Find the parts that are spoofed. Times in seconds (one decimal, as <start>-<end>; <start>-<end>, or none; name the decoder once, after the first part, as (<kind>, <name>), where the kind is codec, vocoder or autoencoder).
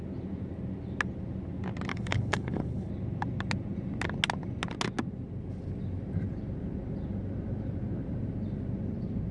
1.9-2.9 (codec, HILCodec)